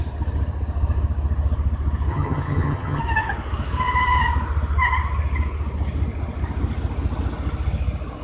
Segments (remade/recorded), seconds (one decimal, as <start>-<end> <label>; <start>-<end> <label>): 0.0-2.1 recorded; 2.1-3.0 remade; 3.0-8.2 recorded